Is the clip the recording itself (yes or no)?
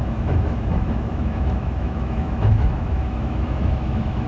no